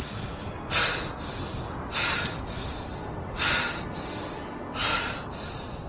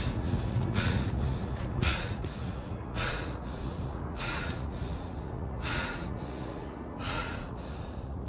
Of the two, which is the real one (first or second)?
first